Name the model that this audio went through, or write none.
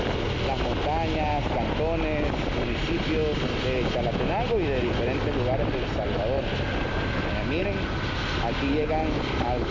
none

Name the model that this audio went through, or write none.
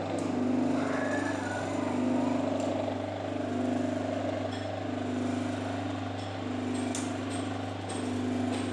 none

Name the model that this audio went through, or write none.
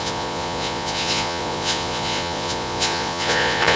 vocoder, Vocos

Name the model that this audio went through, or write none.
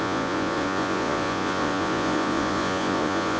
vocoder, Vocos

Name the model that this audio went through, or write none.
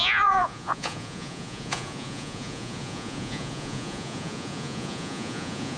vocoder, Vocos